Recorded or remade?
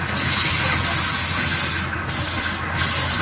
recorded